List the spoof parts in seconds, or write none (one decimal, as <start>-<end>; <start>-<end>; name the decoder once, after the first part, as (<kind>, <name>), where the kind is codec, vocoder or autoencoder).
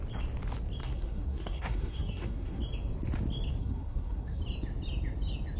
0.8-2.6 (codec, SNAC); 3.6-4.4